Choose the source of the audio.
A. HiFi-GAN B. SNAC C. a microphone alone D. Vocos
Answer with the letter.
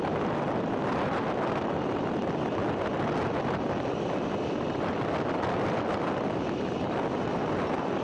C